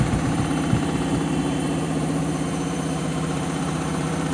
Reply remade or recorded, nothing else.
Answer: remade